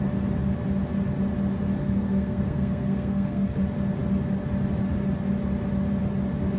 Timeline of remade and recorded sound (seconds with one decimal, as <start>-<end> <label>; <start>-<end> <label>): 0.0-1.8 recorded; 1.8-3.6 remade; 3.6-6.6 recorded